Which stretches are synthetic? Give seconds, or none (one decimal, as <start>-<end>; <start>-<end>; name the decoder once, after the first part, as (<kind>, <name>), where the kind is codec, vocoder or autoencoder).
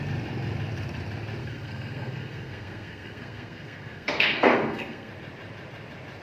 1.4-5.1 (codec, SNAC)